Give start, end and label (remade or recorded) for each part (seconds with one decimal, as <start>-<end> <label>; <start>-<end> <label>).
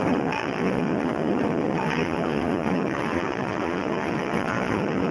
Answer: 0.0-5.1 remade